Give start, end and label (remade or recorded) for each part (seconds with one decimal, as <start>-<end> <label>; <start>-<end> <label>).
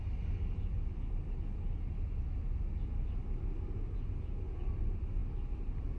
0.0-6.0 recorded